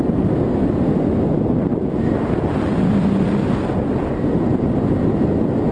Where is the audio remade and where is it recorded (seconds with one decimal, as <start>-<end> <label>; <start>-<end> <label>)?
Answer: 0.0-5.7 recorded